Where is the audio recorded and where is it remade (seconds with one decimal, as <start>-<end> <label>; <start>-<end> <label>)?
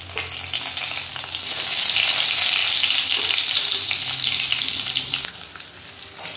0.0-6.4 remade